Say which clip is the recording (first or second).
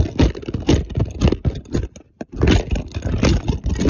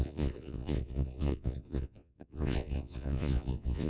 first